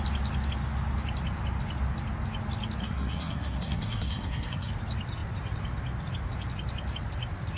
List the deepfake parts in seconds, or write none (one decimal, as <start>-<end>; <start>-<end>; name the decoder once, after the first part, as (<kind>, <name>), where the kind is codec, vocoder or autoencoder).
2.8-4.7 (codec, SNAC)

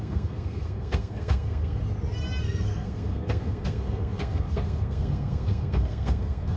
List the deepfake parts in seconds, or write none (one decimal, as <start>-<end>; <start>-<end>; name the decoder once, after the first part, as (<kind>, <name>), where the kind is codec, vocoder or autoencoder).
0.0-1.8 (codec, SNAC); 2.4-6.6

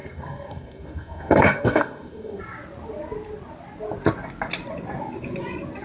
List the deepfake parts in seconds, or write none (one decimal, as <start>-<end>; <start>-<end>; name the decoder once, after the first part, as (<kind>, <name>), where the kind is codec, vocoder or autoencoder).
0.0-2.4 (codec, SNAC)

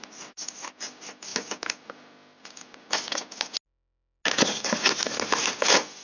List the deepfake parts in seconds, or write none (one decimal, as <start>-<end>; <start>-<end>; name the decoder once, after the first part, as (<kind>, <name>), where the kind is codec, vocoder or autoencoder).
none

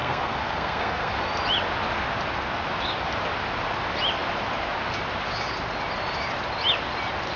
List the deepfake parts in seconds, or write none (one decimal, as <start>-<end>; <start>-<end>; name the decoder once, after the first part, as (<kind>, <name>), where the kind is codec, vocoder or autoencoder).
0.0-1.1 (codec, SNAC)

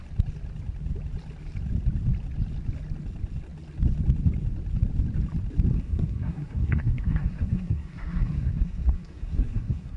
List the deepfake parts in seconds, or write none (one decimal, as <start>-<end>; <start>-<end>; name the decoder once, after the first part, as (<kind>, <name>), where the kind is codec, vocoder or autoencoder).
5.7-10.0 (codec, SNAC)

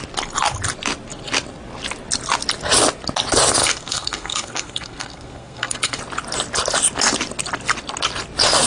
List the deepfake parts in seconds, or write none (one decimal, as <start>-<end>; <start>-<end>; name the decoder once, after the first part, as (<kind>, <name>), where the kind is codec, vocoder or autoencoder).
3.6-6.0 (codec, SNAC)

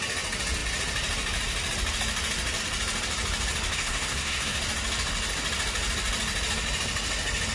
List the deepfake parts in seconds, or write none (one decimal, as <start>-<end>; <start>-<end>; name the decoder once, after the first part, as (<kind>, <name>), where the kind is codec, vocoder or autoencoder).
3.7-4.6 (codec, SNAC)